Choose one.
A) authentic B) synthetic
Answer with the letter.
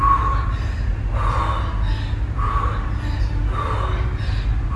A